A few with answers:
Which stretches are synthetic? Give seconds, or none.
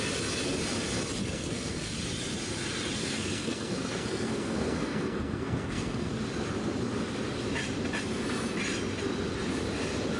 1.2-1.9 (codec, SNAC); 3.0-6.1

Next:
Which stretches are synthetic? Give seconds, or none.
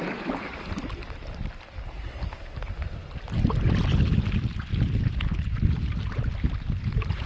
none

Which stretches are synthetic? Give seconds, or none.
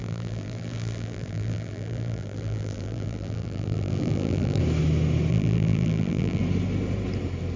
0.0-4.6 (vocoder, BigVGAN v2); 5.3-6.4